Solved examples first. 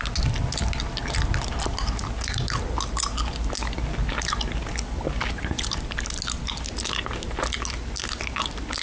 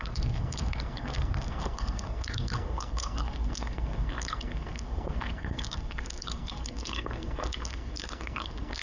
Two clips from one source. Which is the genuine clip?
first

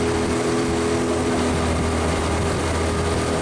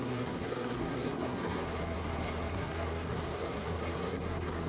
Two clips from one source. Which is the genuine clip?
first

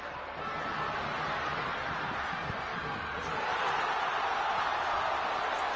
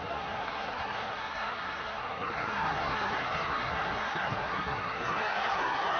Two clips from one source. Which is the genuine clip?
first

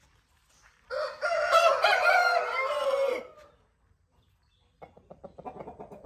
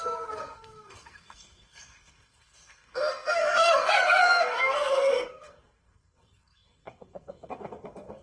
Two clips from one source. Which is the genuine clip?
first